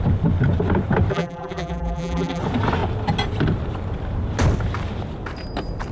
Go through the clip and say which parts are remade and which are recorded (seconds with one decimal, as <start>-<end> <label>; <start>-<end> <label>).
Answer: 0.0-1.1 recorded; 1.1-2.4 remade; 2.4-5.9 recorded